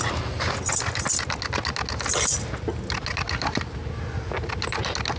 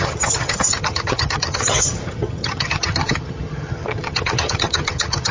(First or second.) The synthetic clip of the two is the second